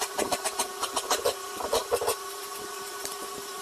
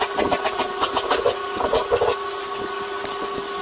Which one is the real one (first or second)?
second